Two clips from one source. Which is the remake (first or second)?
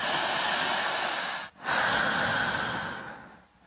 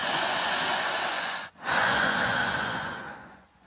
second